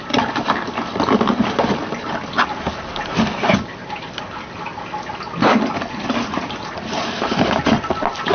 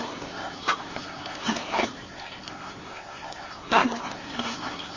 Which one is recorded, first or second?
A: first